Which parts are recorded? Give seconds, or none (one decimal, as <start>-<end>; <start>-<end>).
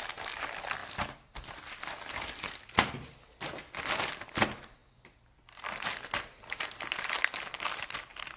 0.0-0.8; 2.9-4.8; 7.2-8.4